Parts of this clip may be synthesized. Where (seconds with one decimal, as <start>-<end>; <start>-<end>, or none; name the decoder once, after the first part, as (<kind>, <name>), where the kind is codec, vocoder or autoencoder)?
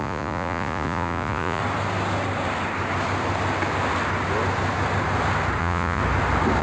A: 0.0-1.6 (vocoder, Vocos); 5.6-6.0